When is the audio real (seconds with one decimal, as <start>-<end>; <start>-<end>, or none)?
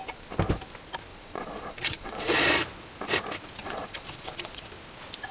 0.0-1.1; 2.6-3.6; 4.6-5.3